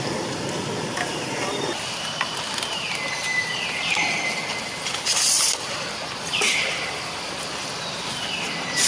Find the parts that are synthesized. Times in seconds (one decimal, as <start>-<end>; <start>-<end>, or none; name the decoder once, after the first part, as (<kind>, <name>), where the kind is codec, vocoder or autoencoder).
none